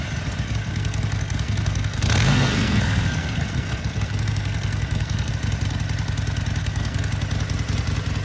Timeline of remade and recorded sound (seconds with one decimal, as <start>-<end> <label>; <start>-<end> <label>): 0.0-0.7 recorded; 0.7-5.3 remade; 5.3-6.6 recorded; 6.6-7.1 remade; 7.1-8.2 recorded